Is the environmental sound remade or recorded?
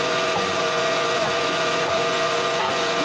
remade